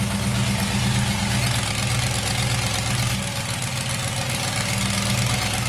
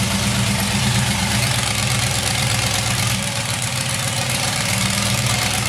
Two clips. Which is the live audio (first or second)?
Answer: first